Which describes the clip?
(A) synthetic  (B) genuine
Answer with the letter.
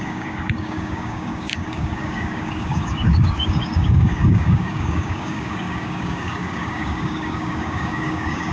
A